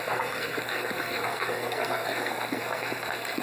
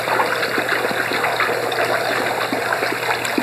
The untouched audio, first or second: second